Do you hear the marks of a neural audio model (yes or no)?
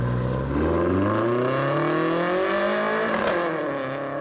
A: no